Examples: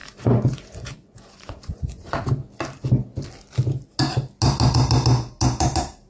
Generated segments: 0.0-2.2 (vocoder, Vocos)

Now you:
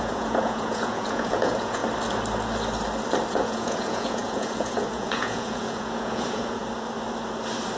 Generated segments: 0.0-1.8 (vocoder, Vocos); 3.3-6.6

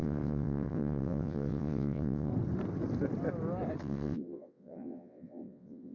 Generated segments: 0.0-2.3 (vocoder, WaveNeXt); 3.8-5.9

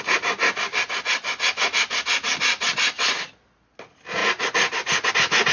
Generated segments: none

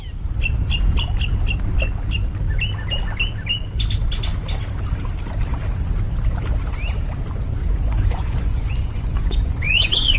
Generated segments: 7.6-10.2 (vocoder, Vocos)

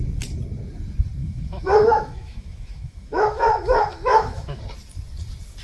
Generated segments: 1.2-4.6 (autoencoder, DAC-VAE)

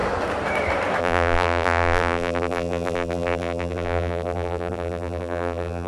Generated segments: 1.0-5.9 (vocoder, BigVGAN v2)

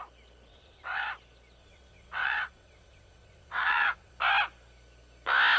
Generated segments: 0.5-1.1 (vocoder, WaveNeXt); 1.6-4.1